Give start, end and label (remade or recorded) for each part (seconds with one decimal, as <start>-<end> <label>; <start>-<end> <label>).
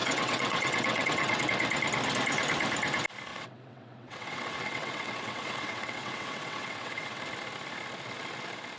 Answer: 0.0-1.4 remade; 1.4-3.3 recorded; 3.3-7.2 remade; 7.2-8.8 recorded